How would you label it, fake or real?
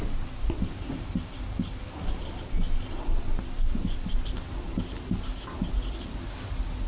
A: real